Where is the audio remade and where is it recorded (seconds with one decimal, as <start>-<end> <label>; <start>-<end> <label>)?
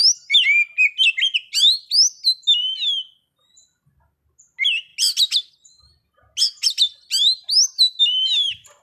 0.0-8.8 recorded